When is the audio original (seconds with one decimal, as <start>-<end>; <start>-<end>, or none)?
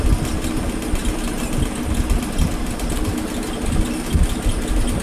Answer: 0.0-5.0